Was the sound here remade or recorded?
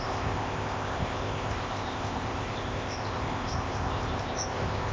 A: remade